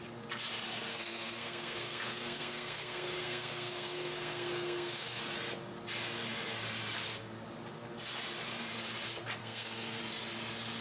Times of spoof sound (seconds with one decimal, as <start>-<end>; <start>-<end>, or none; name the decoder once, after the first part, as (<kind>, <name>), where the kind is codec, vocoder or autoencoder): 0.9-5.2 (codec, SNAC); 9.4-10.0